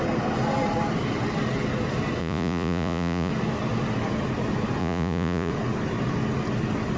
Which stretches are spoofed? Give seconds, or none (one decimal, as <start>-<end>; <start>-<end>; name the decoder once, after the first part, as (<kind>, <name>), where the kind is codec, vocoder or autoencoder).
2.2-3.3 (vocoder, Vocos); 4.8-5.5